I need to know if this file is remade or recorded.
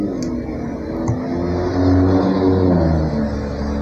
recorded